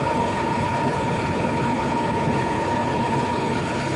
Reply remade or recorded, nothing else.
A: remade